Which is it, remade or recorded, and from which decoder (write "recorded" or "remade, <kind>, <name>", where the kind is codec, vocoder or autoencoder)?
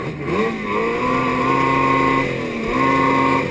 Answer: recorded